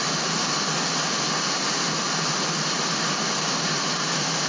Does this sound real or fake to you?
real